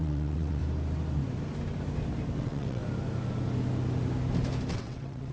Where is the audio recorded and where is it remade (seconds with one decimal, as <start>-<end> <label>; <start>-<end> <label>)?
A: 0.0-0.6 remade; 0.6-2.4 recorded; 2.4-2.8 remade; 2.8-4.7 recorded; 4.7-5.3 remade